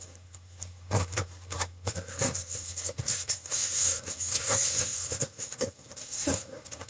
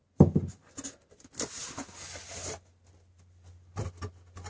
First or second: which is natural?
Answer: second